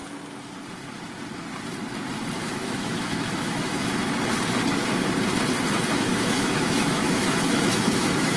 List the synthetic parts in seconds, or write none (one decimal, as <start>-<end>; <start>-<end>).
2.5-4.0; 5.9-8.4